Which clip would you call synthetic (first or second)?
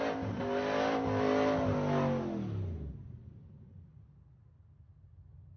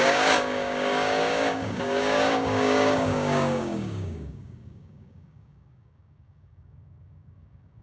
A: second